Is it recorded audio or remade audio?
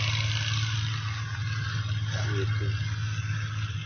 recorded